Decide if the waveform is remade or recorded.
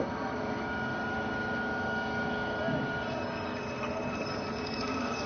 recorded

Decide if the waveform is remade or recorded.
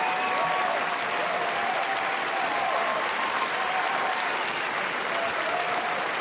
recorded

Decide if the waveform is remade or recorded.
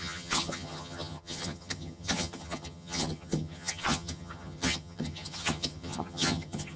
remade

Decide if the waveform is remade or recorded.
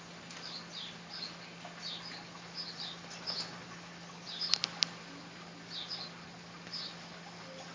recorded